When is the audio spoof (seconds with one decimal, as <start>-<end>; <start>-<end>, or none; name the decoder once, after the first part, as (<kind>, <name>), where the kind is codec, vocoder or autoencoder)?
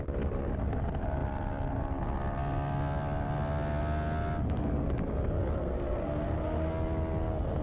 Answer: 5.5-6.7 (codec, SNAC)